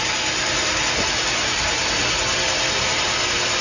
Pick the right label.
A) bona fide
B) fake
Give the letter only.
A